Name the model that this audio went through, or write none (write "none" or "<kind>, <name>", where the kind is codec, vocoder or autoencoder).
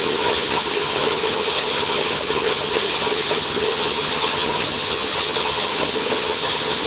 vocoder, HiFi-GAN